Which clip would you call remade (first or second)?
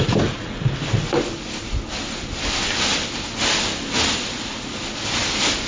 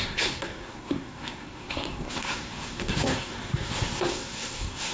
second